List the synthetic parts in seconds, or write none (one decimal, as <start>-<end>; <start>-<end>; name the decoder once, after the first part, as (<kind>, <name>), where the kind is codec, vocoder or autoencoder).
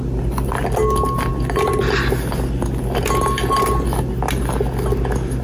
none